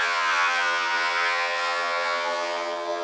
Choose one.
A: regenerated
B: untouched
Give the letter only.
A